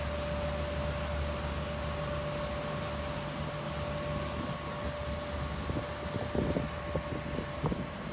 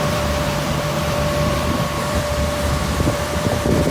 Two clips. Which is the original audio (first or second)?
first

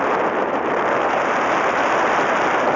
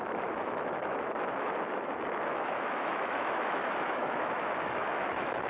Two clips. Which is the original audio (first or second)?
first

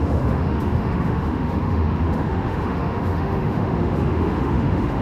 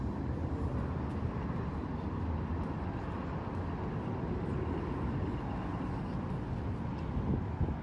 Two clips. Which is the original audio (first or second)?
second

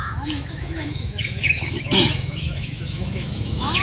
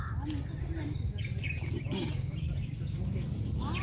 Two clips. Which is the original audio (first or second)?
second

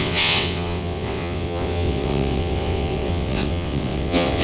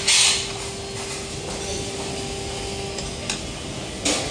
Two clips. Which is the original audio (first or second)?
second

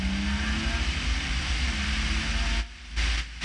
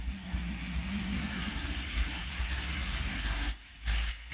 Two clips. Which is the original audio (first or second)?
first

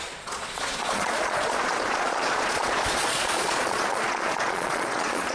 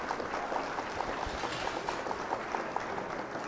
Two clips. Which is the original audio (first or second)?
second